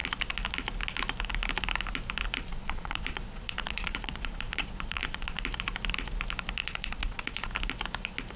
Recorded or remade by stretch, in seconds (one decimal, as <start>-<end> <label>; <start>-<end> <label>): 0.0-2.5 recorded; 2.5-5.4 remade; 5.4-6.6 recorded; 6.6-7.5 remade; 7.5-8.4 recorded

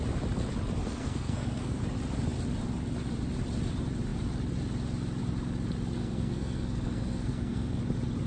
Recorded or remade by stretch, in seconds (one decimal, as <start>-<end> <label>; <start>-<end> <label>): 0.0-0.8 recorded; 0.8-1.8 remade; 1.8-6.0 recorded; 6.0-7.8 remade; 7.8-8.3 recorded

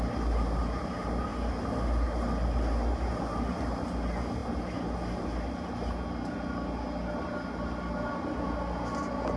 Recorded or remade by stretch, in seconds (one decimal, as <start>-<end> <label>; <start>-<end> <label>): 0.0-9.4 recorded

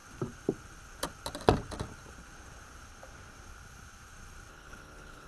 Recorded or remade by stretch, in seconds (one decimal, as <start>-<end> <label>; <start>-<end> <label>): 0.0-4.5 recorded; 4.5-5.3 remade

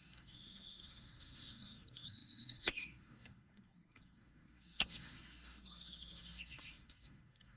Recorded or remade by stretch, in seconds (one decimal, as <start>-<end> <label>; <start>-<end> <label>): 0.0-7.6 remade

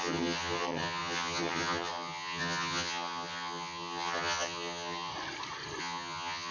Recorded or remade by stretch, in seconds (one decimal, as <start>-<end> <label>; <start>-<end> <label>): 0.0-5.1 remade; 5.1-5.8 recorded; 5.8-6.5 remade

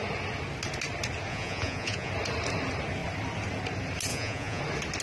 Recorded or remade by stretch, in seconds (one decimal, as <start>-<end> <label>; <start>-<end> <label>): 0.0-1.3 recorded; 1.3-2.1 remade; 2.1-4.1 recorded; 4.1-4.6 remade; 4.6-5.0 recorded